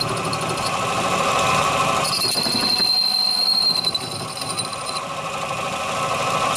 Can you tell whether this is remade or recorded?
recorded